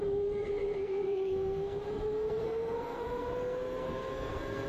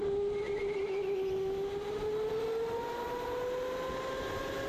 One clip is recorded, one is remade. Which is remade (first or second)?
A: first